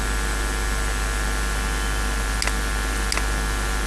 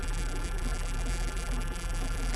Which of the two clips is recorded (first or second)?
first